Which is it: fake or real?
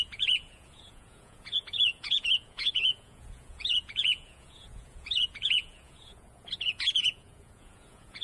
fake